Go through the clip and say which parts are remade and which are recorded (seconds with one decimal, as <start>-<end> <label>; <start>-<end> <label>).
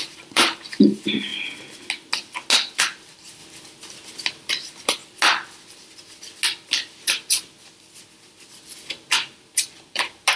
0.0-1.3 remade; 1.3-2.8 recorded; 2.8-3.4 remade; 3.4-4.5 recorded; 4.5-5.0 remade; 5.0-9.9 recorded; 9.9-10.4 remade